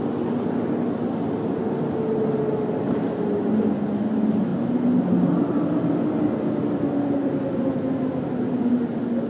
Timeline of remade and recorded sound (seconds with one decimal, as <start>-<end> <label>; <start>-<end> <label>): 0.0-9.3 recorded